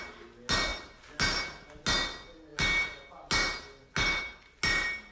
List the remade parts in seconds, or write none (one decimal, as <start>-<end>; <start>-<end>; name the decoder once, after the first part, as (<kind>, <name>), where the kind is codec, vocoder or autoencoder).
none